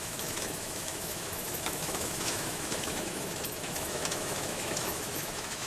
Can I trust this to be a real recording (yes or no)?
no